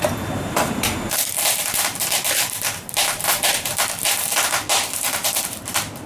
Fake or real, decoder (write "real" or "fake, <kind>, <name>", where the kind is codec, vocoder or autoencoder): fake, vocoder, BigVGAN v2